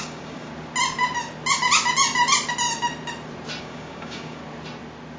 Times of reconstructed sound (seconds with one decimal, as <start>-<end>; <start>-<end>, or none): 0.0-0.5; 3.6-4.4